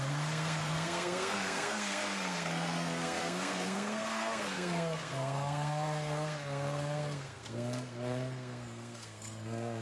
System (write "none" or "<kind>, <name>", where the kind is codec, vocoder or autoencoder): codec, SNAC